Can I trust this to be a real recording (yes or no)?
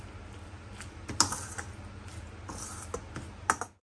yes